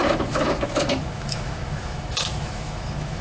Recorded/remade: remade